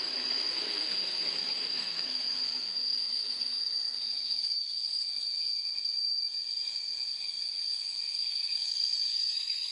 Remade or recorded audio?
remade